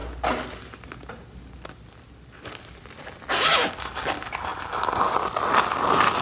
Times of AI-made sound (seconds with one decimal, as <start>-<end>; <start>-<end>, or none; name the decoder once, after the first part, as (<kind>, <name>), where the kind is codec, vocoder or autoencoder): none